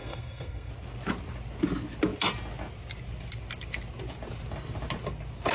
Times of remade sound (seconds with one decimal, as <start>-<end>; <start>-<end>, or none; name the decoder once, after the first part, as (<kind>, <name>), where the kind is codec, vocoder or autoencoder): 0.0-0.7 (codec, SNAC)